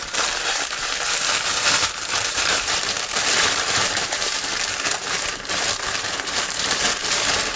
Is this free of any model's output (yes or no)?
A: no